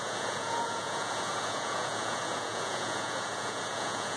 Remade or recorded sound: remade